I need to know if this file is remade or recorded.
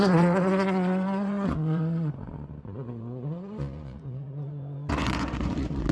remade